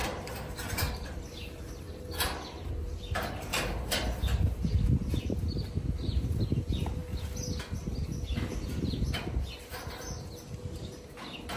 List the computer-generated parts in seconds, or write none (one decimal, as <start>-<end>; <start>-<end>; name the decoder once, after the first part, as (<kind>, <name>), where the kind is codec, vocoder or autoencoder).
0.0-2.7 (vocoder, BigVGAN v2); 3.5-4.7; 8.5-9.0